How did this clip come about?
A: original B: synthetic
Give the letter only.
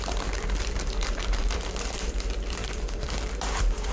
B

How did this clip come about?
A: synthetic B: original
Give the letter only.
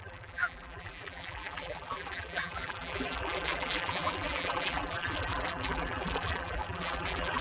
A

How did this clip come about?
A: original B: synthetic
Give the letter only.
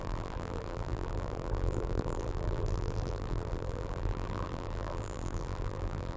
B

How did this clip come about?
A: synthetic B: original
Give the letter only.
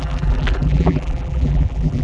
A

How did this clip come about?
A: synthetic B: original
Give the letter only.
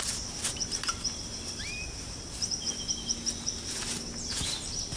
B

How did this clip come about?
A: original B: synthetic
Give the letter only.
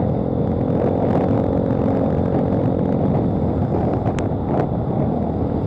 A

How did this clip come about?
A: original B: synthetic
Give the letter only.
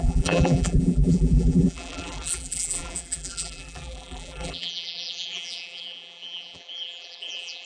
B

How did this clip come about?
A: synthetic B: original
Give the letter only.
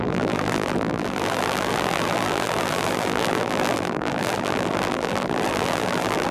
A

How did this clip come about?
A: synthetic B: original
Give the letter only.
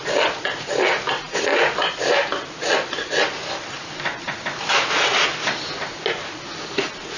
B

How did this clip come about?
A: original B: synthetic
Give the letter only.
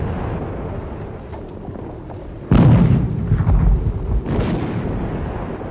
A